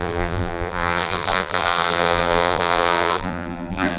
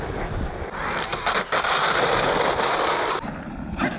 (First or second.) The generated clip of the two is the first